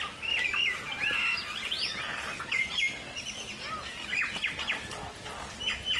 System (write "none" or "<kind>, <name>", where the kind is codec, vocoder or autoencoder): none